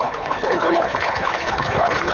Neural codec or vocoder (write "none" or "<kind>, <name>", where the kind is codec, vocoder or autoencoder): codec, HILCodec